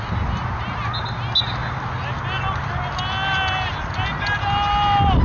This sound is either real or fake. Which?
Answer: real